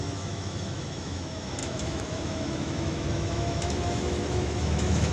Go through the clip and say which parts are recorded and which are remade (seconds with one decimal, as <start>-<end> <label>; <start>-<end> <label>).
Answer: 0.0-5.1 remade